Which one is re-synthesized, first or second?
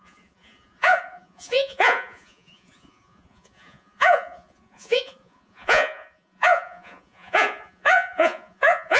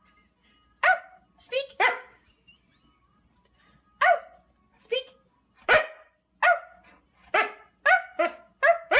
first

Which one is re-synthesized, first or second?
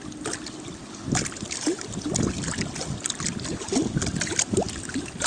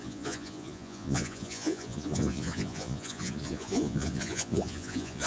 second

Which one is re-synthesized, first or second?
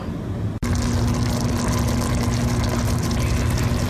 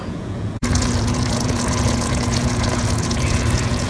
second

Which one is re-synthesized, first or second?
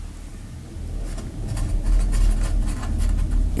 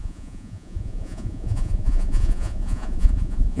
second